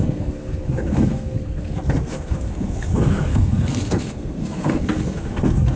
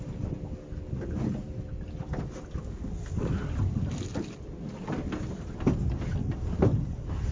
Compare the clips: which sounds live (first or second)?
second